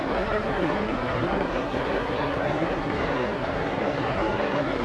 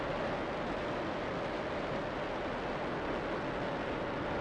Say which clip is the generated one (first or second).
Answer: first